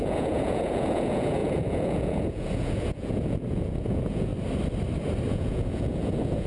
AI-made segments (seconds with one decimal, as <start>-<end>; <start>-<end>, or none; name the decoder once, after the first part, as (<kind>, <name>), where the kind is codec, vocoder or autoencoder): 0.0-4.3 (vocoder, Vocos); 5.3-6.5

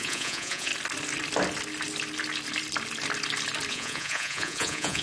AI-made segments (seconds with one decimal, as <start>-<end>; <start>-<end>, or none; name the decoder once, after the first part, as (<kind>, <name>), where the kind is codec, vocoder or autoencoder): 0.0-0.7 (vocoder, Vocos); 3.7-5.0

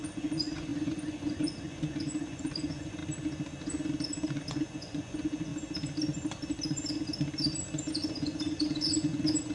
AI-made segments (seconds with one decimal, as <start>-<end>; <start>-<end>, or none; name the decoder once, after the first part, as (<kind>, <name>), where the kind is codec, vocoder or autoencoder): 0.0-3.0 (vocoder, Vocos); 4.3-5.5; 7.9-9.5

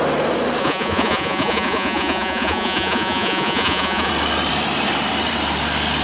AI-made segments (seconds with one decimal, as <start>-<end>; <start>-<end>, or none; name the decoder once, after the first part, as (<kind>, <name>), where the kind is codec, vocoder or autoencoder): 0.6-4.1 (vocoder, Vocos)

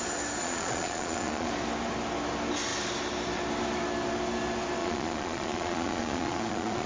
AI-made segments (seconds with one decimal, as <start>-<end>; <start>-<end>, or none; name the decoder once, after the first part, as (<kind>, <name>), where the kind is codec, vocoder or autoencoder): 0.4-1.5 (vocoder, Vocos); 4.8-6.9